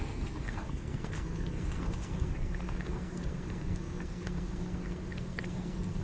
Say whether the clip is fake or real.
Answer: fake